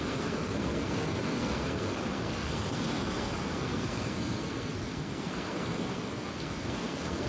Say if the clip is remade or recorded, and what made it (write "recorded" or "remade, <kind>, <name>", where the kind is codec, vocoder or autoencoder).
remade, codec, SNAC